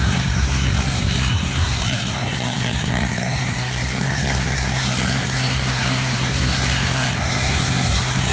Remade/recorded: remade